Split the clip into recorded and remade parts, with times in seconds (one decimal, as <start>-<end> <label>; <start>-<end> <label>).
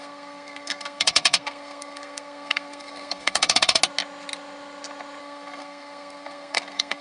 0.0-3.8 remade; 3.8-5.2 recorded; 5.2-7.0 remade